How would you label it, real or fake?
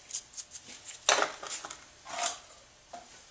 real